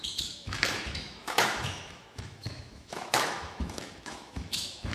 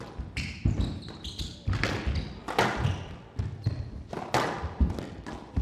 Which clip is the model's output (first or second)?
first